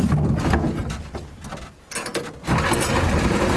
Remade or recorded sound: recorded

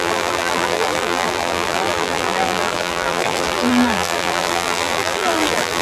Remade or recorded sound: remade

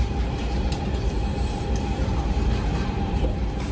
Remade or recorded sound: remade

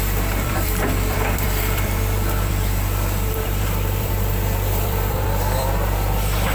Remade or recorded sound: remade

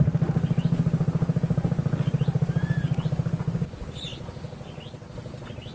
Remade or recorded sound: recorded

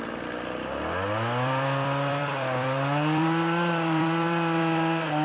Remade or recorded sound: remade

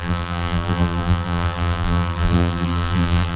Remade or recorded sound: remade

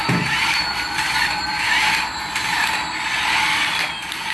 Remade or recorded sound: remade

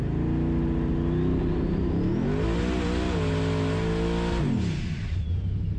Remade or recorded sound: recorded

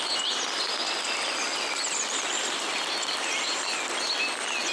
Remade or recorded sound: recorded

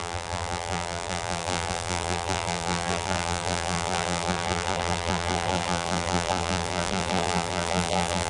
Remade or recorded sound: remade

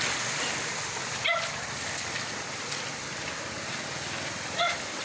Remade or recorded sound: recorded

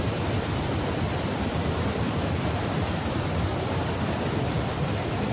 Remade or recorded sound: recorded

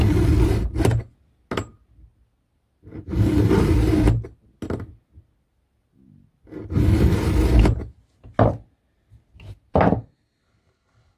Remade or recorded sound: recorded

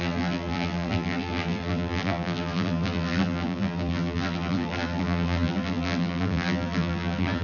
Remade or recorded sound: remade